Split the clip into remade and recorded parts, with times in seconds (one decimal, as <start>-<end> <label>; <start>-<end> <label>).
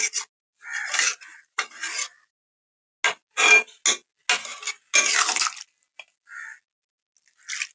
0.0-0.9 recorded; 0.9-2.5 remade; 2.5-7.7 recorded